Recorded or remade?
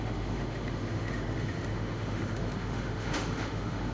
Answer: remade